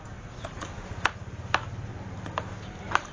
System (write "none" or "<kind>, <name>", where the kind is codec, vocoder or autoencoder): none